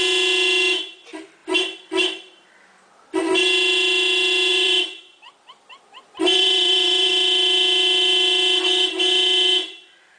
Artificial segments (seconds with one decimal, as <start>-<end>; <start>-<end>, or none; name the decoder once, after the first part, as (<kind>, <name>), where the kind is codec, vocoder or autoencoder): 1.4-1.9 (vocoder, BigVGAN v2); 4.5-7.1